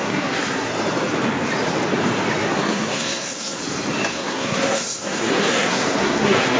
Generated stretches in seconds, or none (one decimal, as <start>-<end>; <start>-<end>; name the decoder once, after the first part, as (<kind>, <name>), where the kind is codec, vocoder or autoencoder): 0.0-0.7 (codec, SNAC); 2.4-3.6; 4.1-6.6